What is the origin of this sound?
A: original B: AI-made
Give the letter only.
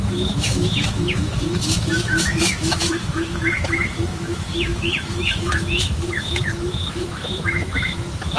B